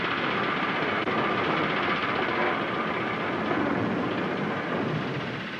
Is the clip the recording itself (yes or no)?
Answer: yes